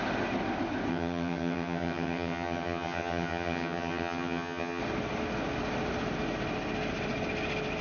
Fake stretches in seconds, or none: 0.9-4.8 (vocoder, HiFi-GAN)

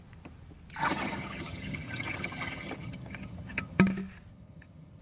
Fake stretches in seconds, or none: 0.8-3.8 (vocoder, HiFi-GAN); 4.3-5.0

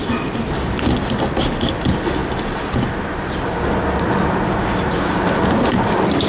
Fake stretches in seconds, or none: none

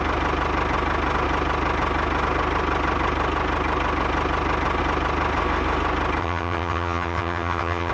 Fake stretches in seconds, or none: 6.2-7.9 (vocoder, HiFi-GAN)

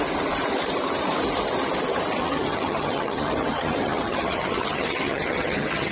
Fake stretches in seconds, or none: 2.2-5.9 (vocoder, HiFi-GAN)

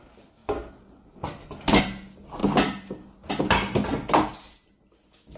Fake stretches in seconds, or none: none